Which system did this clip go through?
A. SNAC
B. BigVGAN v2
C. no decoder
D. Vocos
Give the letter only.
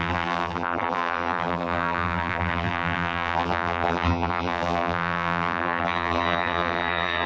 B